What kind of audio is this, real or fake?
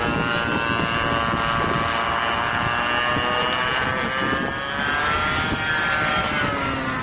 real